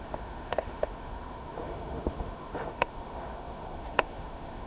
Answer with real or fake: fake